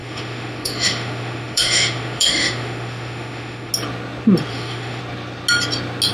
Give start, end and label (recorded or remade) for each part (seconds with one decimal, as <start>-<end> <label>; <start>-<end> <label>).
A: 0.0-3.7 remade; 3.7-4.5 recorded; 4.5-5.0 remade; 5.0-6.1 recorded